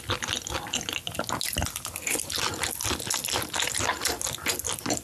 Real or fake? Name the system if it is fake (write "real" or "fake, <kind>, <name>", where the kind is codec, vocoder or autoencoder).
real